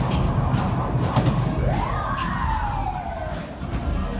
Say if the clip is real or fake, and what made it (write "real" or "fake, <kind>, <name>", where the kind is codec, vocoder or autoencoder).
real